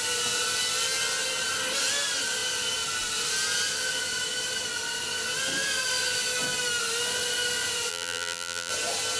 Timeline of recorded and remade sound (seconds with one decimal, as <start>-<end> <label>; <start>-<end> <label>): 0.0-7.9 recorded; 7.9-8.7 remade; 8.7-9.2 recorded